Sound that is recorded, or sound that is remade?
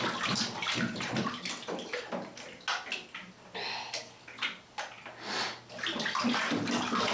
recorded